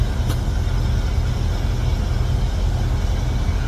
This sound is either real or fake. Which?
real